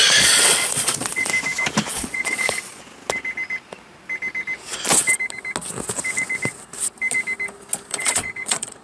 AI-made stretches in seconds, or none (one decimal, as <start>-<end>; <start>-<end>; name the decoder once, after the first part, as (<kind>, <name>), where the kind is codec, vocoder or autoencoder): 0.0-1.3 (vocoder, Vocos); 1.9-2.8; 7.9-8.8